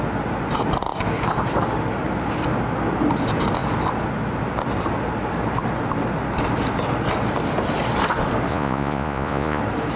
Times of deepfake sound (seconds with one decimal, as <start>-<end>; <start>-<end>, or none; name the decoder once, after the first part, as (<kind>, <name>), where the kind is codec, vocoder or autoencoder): 8.5-9.6 (vocoder, Vocos)